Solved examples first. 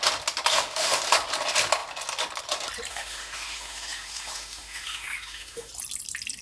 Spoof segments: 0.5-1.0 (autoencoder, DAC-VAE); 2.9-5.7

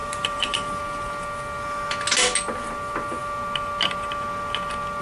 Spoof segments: 0.0-0.8 (vocoder, BigVGAN v2)

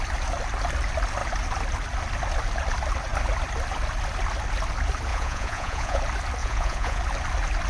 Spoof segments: 5.1-6.0 (vocoder, Vocos); 6.4-7.0

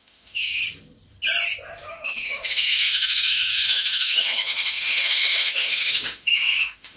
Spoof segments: 0.0-0.6 (autoencoder, DAC-VAE); 1.9-7.0